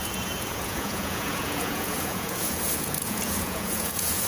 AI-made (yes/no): yes